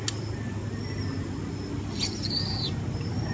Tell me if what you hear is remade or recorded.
recorded